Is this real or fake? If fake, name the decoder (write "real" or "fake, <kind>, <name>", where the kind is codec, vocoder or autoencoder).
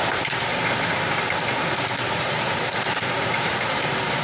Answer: fake, vocoder, BigVGAN v2